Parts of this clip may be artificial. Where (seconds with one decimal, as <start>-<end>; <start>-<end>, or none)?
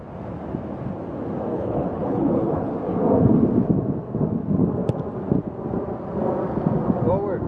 1.5-2.7